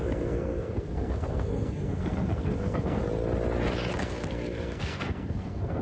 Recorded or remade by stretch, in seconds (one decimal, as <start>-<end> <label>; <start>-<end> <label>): 0.0-3.0 remade; 3.0-3.9 recorded; 3.9-5.8 remade